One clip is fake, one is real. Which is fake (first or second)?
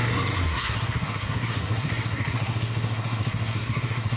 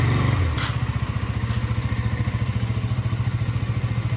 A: first